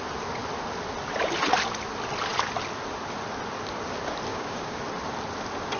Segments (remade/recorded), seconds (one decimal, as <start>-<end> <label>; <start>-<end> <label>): 0.0-4.3 recorded; 4.3-4.8 remade; 4.8-5.8 recorded